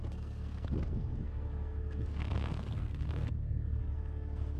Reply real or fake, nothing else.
fake